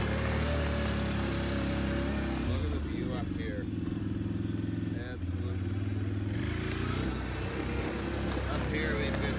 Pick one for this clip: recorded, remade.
recorded